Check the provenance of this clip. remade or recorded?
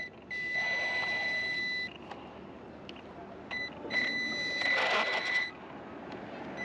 recorded